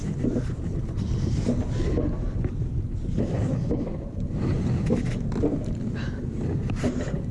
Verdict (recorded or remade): recorded